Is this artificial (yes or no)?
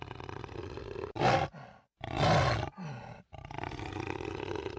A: no